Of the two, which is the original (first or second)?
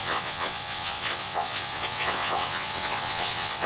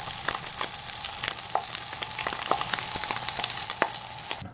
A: second